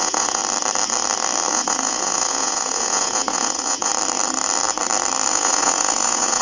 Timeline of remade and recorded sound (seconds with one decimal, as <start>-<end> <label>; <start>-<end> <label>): 0.0-0.4 remade; 0.4-1.5 recorded; 1.5-3.9 remade; 3.9-5.3 recorded; 5.3-6.4 remade